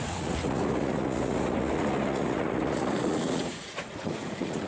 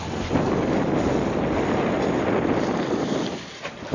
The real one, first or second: second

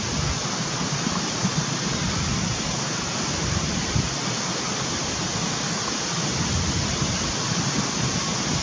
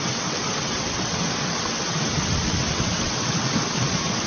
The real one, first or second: first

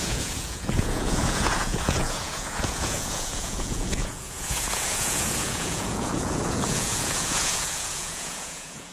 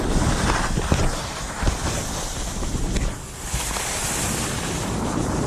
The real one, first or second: second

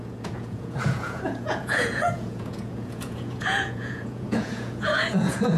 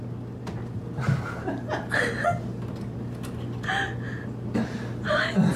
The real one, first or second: second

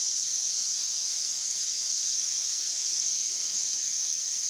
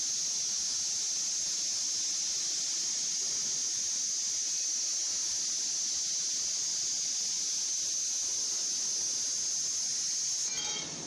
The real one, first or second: second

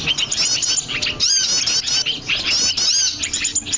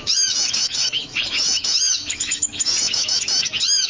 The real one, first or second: first